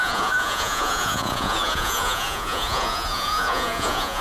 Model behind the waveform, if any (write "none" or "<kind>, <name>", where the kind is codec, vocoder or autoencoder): vocoder, Vocos